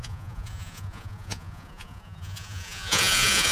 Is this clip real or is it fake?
fake